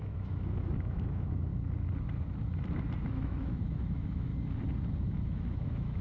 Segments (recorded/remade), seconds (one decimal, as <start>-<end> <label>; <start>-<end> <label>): 0.0-1.5 remade; 1.5-3.1 recorded; 3.1-4.3 remade; 4.3-5.1 recorded; 5.1-6.0 remade